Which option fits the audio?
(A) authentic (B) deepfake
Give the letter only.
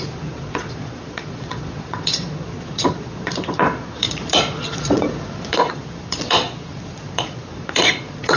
B